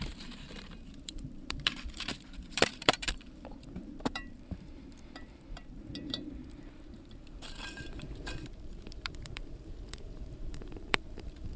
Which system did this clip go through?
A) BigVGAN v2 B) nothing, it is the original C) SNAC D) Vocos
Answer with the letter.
A